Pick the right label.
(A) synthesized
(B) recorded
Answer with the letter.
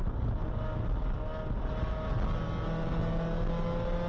B